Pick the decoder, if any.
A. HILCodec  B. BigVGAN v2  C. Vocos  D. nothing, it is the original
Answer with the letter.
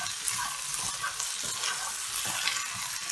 D